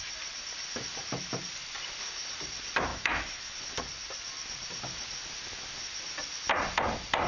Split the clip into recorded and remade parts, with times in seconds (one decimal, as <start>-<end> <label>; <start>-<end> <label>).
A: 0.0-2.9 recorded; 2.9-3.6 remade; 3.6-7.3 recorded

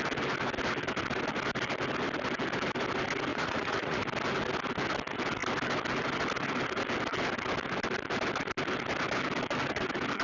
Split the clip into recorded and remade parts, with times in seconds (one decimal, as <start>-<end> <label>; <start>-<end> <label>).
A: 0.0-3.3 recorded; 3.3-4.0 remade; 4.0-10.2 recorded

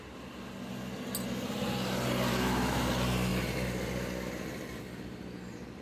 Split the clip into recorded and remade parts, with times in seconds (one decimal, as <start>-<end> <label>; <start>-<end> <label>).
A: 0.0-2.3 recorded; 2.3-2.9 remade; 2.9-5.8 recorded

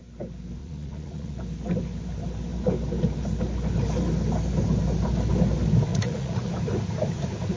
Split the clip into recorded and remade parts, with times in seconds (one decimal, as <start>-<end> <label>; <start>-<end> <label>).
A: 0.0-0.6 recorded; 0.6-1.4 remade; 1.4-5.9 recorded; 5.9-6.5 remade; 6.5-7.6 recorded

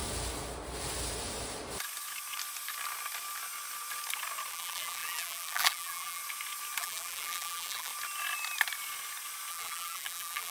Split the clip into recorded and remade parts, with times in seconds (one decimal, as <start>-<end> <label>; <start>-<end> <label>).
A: 0.0-4.5 recorded; 4.5-6.2 remade; 6.2-6.8 recorded; 6.8-7.9 remade; 7.9-9.5 recorded; 9.5-10.5 remade

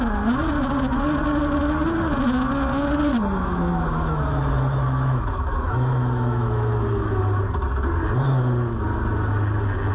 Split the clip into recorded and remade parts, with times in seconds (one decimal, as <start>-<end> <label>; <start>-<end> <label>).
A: 0.0-3.1 recorded; 3.1-7.2 remade; 7.2-9.9 recorded